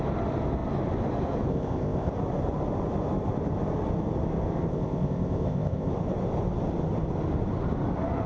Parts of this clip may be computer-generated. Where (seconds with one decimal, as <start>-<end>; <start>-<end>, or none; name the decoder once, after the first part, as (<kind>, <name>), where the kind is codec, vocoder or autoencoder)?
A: 1.5-2.1 (codec, ZipCodec); 4.7-5.9